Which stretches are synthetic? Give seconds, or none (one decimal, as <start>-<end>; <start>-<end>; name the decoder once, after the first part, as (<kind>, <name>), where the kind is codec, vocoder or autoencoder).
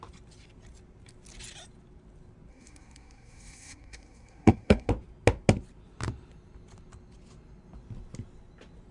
2.5-4.9 (codec, SNAC)